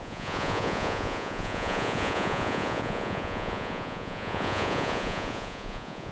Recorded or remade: remade